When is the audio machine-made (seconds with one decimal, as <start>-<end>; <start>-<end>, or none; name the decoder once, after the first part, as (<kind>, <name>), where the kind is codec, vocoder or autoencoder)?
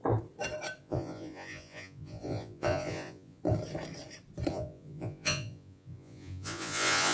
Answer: 0.8-3.4 (vocoder, Vocos); 4.5-7.1